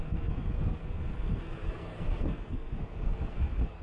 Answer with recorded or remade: remade